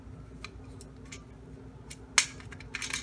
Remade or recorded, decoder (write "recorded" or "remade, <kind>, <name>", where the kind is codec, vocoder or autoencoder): recorded